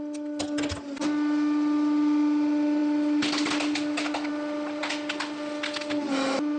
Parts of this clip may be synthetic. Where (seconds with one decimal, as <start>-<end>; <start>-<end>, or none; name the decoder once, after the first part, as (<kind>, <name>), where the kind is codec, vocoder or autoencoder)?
none